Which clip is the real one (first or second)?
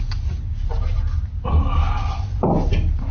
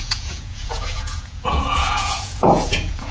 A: first